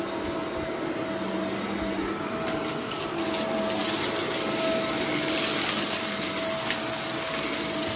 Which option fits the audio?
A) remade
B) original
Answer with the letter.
B